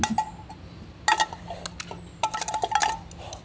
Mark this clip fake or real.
real